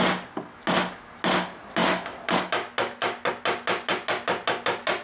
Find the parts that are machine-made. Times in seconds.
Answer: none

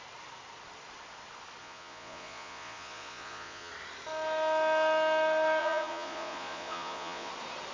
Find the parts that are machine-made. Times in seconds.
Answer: 1.6-3.7; 5.6-7.3

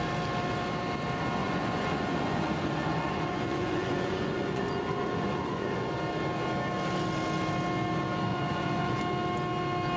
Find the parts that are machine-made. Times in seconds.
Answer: 1.4-5.9; 8.3-9.0